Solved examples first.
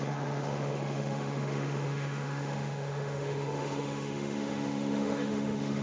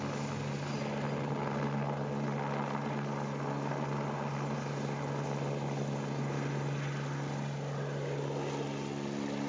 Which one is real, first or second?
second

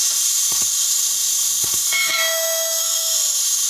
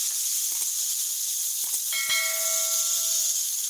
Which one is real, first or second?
second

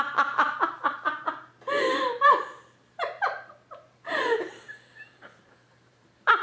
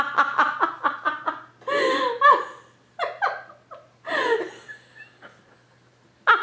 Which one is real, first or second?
second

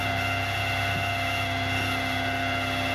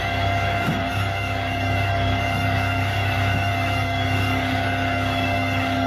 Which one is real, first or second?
first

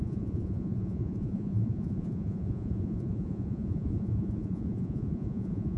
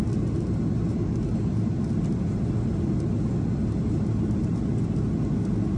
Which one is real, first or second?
second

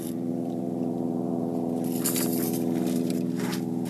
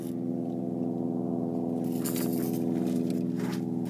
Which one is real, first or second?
second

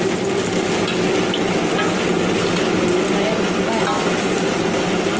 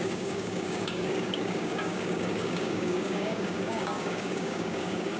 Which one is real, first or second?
first